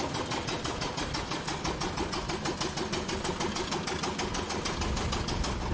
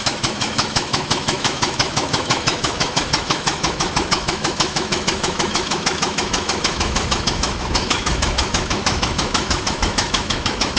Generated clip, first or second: second